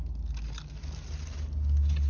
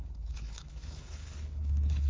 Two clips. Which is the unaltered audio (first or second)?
first